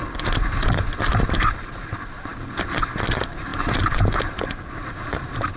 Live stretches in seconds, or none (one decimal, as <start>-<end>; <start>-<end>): 0.0-5.6